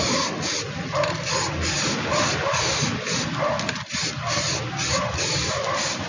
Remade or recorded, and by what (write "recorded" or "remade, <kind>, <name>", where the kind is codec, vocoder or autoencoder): recorded